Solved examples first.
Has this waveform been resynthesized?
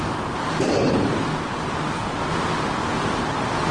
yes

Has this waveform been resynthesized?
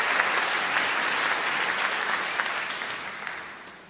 no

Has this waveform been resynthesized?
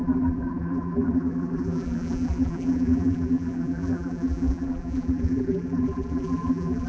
yes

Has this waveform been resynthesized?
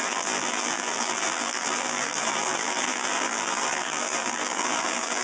yes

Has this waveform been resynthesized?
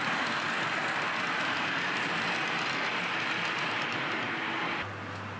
no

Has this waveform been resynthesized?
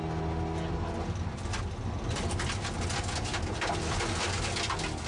no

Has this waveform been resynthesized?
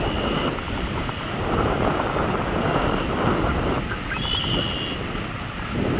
no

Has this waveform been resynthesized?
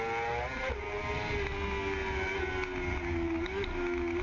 no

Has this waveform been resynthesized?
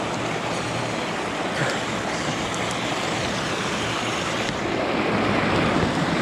no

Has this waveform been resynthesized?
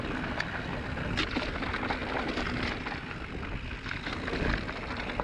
no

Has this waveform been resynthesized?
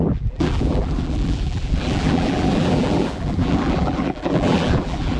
yes